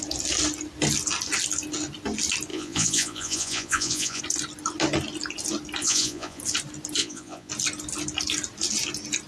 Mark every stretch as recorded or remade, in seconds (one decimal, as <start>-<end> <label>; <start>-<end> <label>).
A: 0.0-2.5 recorded; 2.5-4.2 remade; 4.2-5.8 recorded; 5.8-6.4 remade; 6.4-7.0 recorded; 7.0-7.5 remade; 7.5-9.3 recorded